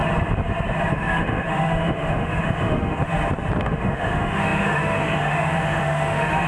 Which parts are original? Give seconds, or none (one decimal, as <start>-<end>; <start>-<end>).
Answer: 0.0-0.9; 3.0-3.6